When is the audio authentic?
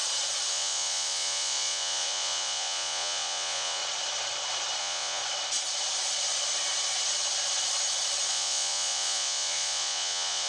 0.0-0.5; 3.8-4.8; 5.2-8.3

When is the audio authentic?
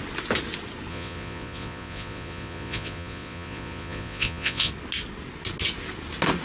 0.0-0.9; 4.7-6.4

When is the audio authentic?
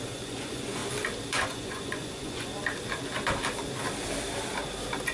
0.8-1.3; 2.5-5.1